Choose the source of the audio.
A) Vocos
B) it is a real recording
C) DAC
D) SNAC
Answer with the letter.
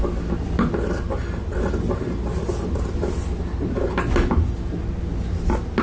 B